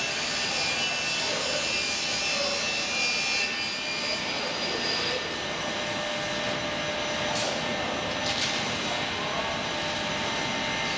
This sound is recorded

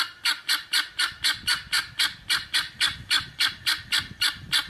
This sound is recorded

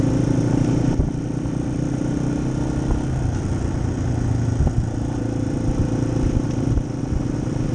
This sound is recorded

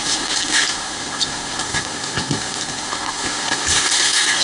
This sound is remade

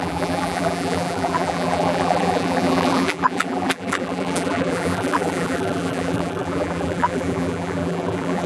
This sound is remade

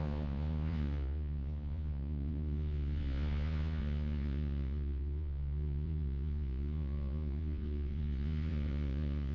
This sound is remade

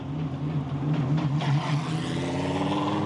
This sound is recorded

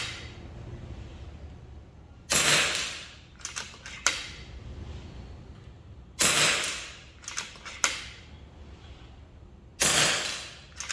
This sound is recorded